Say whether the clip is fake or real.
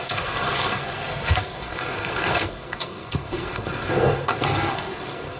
fake